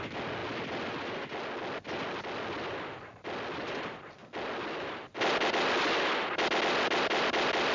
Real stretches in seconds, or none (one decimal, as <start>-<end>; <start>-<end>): 0.0-7.7